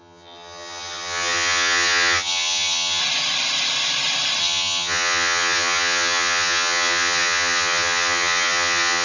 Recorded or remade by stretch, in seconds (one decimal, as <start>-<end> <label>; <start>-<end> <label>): 0.0-3.0 remade; 3.0-4.4 recorded; 4.4-9.0 remade